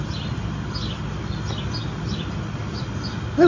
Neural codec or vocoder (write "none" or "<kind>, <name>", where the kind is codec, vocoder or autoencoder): none